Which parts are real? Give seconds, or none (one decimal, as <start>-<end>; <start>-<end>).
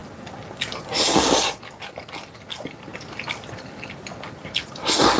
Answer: 0.0-5.2